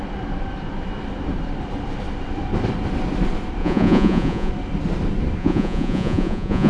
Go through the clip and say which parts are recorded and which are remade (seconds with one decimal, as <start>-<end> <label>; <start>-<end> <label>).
0.0-3.6 recorded; 3.6-4.5 remade; 4.5-5.4 recorded; 5.4-6.7 remade